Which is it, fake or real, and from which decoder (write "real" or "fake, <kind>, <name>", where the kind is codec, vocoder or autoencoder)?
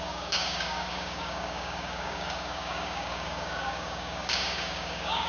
fake, codec, DAC